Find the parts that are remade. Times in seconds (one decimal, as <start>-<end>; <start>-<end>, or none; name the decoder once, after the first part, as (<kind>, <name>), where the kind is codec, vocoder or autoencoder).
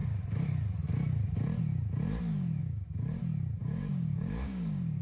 2.6-3.2 (codec, DAC); 3.6-5.0